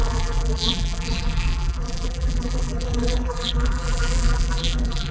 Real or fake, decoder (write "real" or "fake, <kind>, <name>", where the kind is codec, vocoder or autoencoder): fake, vocoder, BigVGAN v2